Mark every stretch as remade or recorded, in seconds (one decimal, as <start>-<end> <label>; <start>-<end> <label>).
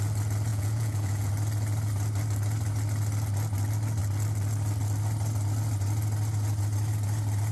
0.0-0.5 recorded; 0.5-1.3 remade; 1.3-7.5 recorded